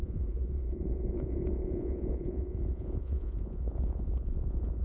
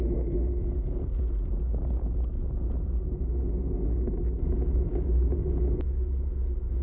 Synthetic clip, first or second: first